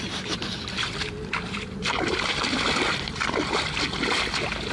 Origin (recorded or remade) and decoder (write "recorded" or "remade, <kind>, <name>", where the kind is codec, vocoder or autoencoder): remade, vocoder, BigVGAN v2